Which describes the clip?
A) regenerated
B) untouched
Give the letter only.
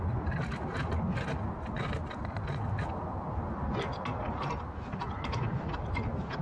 B